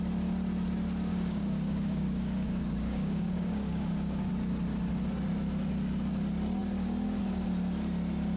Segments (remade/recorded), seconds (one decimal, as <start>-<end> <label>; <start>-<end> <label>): 0.0-1.1 recorded; 1.1-4.3 remade; 4.3-8.4 recorded